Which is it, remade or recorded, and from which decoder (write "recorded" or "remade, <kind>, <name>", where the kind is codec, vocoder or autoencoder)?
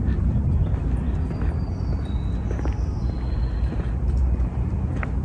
recorded